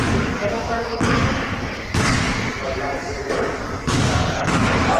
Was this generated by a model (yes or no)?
yes